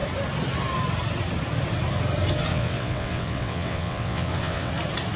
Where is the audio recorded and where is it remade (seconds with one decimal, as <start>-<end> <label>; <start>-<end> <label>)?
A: 0.0-2.5 recorded; 2.5-4.7 remade; 4.7-5.2 recorded

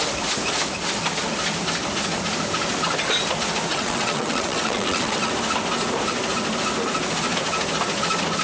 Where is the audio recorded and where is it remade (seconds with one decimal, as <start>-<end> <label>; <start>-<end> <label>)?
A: 0.0-3.7 recorded; 3.7-5.3 remade; 5.3-8.4 recorded

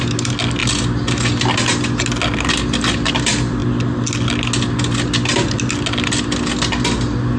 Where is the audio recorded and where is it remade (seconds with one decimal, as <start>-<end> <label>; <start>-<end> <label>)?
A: 0.0-7.4 recorded

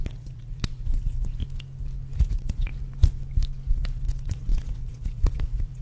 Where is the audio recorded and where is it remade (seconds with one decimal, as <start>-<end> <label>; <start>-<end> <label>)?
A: 0.0-1.4 remade; 1.4-2.3 recorded; 2.3-2.7 remade; 2.7-3.7 recorded; 3.7-5.8 remade

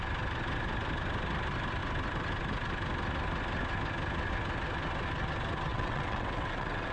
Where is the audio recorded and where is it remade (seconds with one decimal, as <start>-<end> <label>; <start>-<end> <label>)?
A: 0.0-5.7 recorded; 5.7-6.9 remade

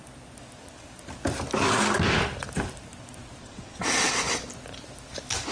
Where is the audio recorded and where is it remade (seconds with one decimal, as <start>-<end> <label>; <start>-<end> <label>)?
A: 0.0-3.4 recorded; 3.4-4.2 remade; 4.2-5.5 recorded